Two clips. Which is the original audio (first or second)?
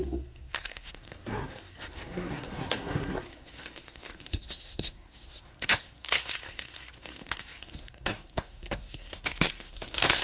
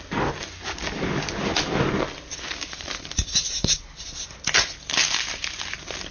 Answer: second